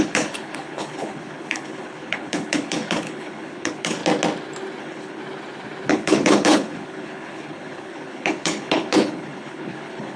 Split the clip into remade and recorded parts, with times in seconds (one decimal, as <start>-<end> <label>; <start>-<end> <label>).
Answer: 0.0-4.0 remade; 4.0-4.8 recorded; 4.8-5.2 remade; 5.2-5.9 recorded; 5.9-10.2 remade